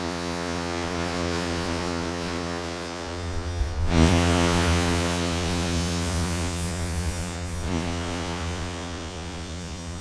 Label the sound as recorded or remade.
remade